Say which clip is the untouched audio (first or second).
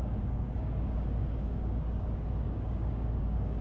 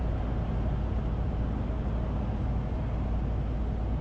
second